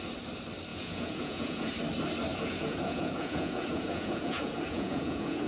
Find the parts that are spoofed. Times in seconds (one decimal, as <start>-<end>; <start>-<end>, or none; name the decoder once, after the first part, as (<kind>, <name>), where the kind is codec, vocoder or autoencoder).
0.7-1.7 (vocoder, Vocos); 2.3-5.5

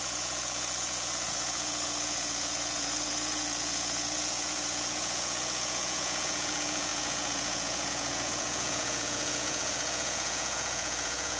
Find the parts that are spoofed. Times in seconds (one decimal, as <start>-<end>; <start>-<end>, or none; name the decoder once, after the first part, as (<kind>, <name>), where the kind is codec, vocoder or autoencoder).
0.0-11.4 (vocoder, Vocos)

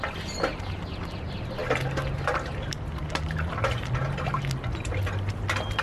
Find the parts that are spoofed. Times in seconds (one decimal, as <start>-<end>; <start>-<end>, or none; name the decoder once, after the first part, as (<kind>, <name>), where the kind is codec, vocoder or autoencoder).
none

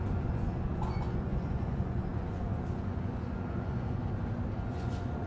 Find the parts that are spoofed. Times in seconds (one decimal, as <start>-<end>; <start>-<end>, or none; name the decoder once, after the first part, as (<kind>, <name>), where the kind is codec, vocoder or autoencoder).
0.0-4.0 (vocoder, Vocos); 4.7-5.3